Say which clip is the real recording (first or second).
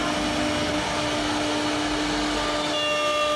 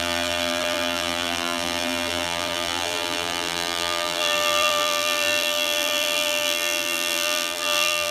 first